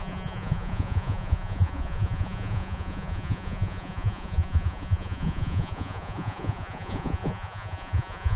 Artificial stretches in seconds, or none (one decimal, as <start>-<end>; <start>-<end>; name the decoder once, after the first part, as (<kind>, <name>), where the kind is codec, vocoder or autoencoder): 0.0-8.4 (vocoder, Vocos)